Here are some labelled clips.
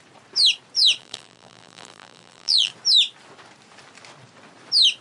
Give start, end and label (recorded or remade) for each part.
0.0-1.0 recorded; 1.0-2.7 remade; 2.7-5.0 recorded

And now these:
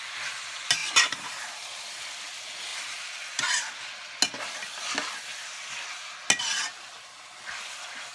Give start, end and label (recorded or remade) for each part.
0.0-0.8 recorded; 0.8-1.7 remade; 1.7-8.1 recorded

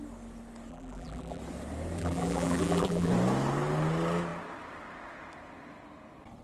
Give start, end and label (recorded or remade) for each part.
0.0-0.7 recorded; 0.7-1.4 remade; 1.4-2.0 recorded; 2.0-3.1 remade; 3.1-6.4 recorded

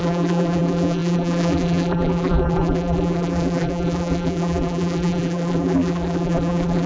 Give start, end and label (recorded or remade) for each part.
0.0-6.9 remade

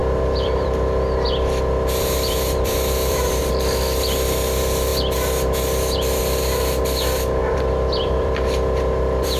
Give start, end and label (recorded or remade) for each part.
0.0-3.4 remade; 3.4-7.4 recorded; 7.4-9.4 remade

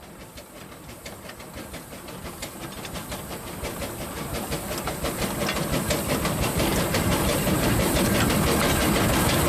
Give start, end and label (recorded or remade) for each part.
0.0-6.7 recorded; 6.7-7.9 remade; 7.9-9.5 recorded

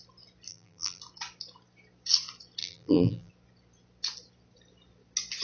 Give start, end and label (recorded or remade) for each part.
0.0-0.5 recorded; 0.5-1.0 remade; 1.0-2.6 recorded; 2.6-3.3 remade; 3.3-5.4 recorded

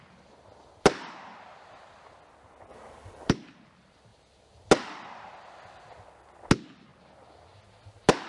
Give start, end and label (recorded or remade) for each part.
0.0-2.7 recorded; 2.7-3.3 remade; 3.3-8.3 recorded